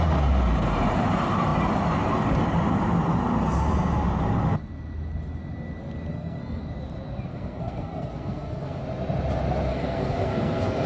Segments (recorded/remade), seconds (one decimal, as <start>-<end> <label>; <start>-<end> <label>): 0.0-6.1 recorded; 6.1-6.6 remade; 6.6-7.3 recorded; 7.3-8.8 remade; 8.8-9.7 recorded; 9.7-10.9 remade